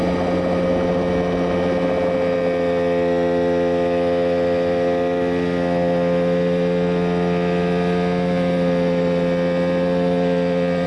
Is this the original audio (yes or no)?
yes